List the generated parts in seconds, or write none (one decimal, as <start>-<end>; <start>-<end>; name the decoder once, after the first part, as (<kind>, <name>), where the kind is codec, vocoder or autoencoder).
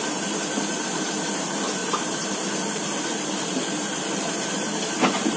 none